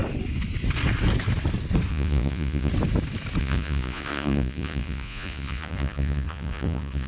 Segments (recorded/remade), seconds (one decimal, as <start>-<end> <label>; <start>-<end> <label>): 0.0-1.9 recorded; 1.9-2.7 remade; 2.7-3.4 recorded; 3.4-7.1 remade